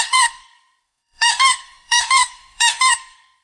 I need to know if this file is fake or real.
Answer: fake